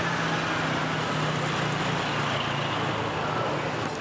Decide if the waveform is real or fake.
real